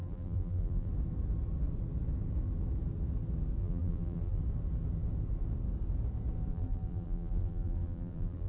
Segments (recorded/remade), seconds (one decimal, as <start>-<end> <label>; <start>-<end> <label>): 0.0-0.9 remade; 0.9-3.6 recorded; 3.6-4.4 remade; 4.4-6.5 recorded; 6.5-8.5 remade